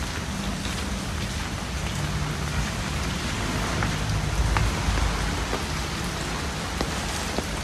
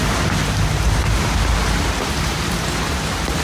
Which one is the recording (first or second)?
first